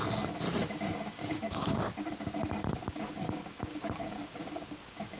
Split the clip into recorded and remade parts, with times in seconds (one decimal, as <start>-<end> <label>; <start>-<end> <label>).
0.0-0.9 recorded; 0.9-1.8 remade; 1.8-3.0 recorded; 3.0-5.2 remade